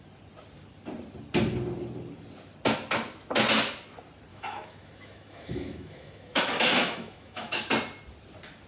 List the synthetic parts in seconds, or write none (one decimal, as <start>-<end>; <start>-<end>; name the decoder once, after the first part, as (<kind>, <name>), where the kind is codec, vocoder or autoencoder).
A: 4.3-7.7 (autoencoder, DAC-VAE)